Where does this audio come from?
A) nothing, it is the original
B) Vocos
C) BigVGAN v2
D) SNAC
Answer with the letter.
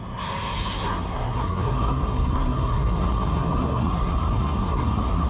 D